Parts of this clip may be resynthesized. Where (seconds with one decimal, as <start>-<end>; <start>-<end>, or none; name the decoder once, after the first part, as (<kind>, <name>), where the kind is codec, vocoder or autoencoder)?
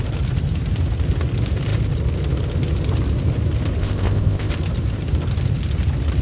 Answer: 3.8-4.5 (codec, ZipCodec)